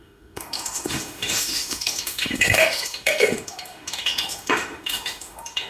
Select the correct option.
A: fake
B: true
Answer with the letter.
A